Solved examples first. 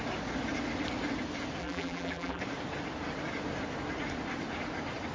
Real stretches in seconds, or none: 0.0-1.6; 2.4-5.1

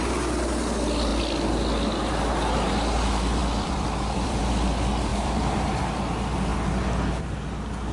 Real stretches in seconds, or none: 0.0-3.4; 4.4-5.1; 5.8-7.9